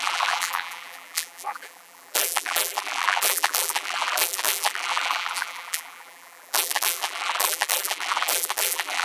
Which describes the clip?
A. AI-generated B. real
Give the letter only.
A